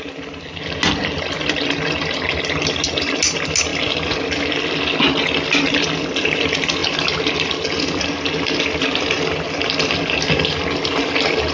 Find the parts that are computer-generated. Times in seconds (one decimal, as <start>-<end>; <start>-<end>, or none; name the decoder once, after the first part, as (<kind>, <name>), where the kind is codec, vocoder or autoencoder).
none